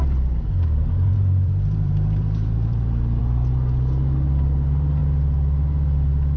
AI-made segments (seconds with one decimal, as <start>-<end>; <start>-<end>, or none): 0.8-3.2